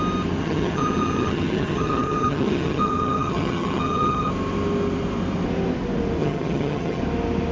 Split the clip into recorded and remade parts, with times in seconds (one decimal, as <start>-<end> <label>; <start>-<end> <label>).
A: 0.0-0.4 recorded; 0.4-4.3 remade; 4.3-6.2 recorded; 6.2-7.0 remade; 7.0-7.5 recorded